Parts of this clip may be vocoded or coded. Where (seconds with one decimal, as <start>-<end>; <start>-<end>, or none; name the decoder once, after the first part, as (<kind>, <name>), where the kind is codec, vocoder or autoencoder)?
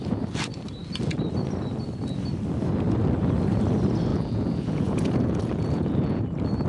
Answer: 4.1-6.2 (vocoder, Vocos)